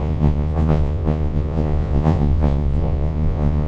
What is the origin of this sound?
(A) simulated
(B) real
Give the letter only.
A